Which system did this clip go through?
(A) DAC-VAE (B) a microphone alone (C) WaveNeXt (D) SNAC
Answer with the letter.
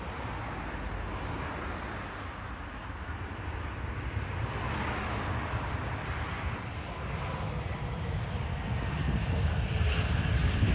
B